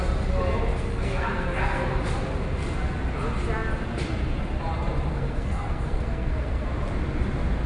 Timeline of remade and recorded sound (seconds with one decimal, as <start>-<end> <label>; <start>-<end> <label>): 0.0-0.7 recorded; 0.7-2.0 remade; 2.0-5.1 recorded; 5.1-6.7 remade; 6.7-7.7 recorded